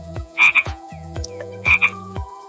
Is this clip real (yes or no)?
no